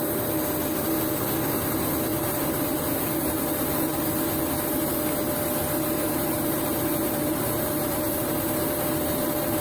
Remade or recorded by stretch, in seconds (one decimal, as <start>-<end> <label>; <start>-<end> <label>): 0.0-2.1 recorded; 2.1-3.3 remade; 3.3-6.0 recorded; 6.0-8.5 remade; 8.5-9.6 recorded